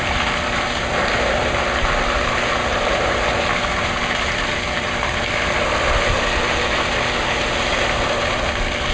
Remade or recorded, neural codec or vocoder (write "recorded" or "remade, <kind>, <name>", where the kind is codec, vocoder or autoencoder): recorded